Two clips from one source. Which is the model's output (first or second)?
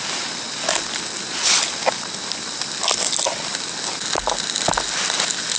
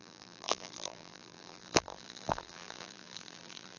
second